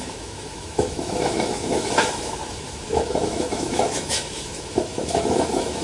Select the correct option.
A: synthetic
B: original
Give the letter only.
A